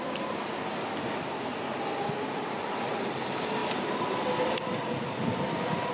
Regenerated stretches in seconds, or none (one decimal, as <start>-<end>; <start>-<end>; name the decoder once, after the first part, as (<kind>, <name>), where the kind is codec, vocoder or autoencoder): none